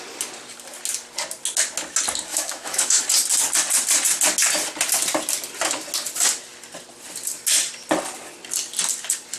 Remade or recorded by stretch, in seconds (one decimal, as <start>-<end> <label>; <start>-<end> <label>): 0.0-2.3 recorded; 2.3-3.0 remade; 3.0-9.4 recorded

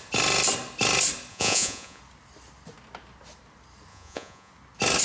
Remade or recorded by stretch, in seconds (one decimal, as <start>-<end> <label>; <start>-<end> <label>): 0.0-1.3 recorded; 1.3-2.0 remade; 2.0-3.9 recorded; 3.9-4.5 remade; 4.5-5.0 recorded